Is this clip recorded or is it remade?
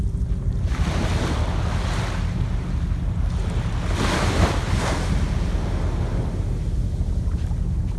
recorded